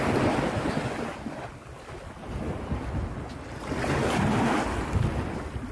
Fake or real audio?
real